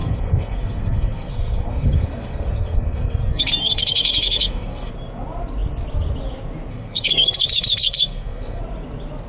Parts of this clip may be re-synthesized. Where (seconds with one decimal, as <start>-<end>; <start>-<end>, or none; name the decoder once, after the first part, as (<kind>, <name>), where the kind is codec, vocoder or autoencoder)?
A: 0.0-4.9 (codec, SNAC); 6.7-8.6